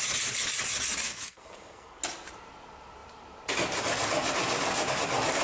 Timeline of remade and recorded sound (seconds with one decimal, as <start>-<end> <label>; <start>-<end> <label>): 0.0-1.1 recorded; 1.1-2.0 remade; 2.0-5.4 recorded